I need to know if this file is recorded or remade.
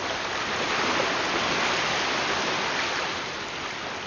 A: recorded